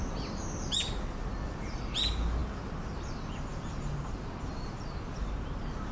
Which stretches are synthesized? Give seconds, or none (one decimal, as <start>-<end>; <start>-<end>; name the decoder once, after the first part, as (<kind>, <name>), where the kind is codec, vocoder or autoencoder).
none